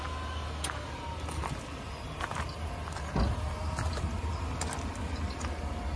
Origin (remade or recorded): recorded